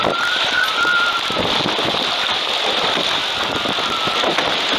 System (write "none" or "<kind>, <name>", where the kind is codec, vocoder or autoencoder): none